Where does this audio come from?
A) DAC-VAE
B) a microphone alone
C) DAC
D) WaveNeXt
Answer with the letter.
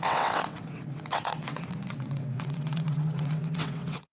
D